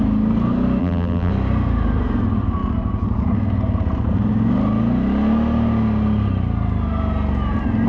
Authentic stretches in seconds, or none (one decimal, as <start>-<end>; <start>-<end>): 0.0-0.8; 1.3-7.9